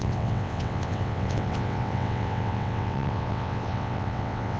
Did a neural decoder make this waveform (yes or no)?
yes